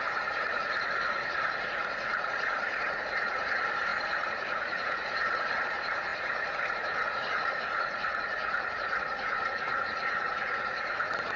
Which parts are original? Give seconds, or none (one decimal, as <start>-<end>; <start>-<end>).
none